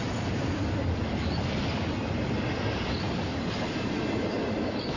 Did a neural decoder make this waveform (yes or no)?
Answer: no